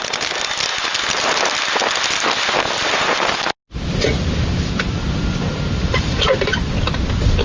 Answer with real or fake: real